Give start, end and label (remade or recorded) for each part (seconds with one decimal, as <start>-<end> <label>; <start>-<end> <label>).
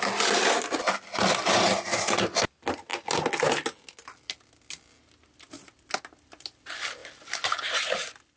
0.0-8.4 recorded